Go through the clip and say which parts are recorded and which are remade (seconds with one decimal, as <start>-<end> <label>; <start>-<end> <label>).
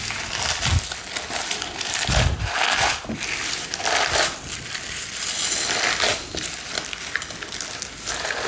0.0-8.5 recorded